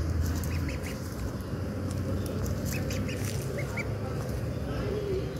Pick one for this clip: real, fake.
real